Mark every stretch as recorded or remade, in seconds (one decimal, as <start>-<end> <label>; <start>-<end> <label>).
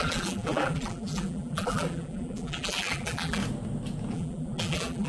0.0-3.4 remade; 3.4-4.1 recorded; 4.1-5.1 remade